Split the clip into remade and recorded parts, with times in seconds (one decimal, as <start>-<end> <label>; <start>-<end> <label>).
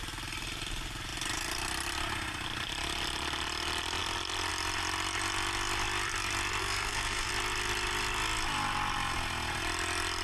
0.0-6.6 recorded; 6.6-7.3 remade; 7.3-10.2 recorded